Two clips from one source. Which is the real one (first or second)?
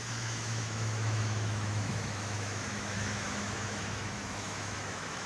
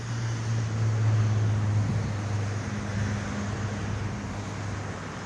second